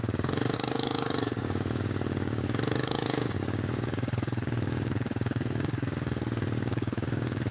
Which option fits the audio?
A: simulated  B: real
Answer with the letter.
A